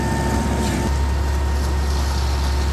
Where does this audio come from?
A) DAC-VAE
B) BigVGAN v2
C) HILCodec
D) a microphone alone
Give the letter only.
D